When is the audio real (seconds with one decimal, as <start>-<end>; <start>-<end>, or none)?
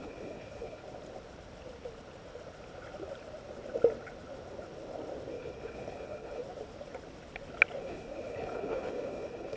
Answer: 0.8-5.3; 6.4-7.8